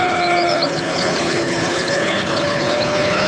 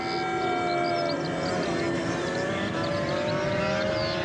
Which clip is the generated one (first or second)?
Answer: first